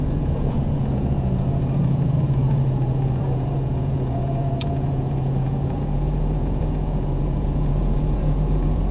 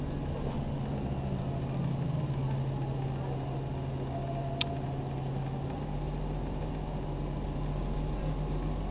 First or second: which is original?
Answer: second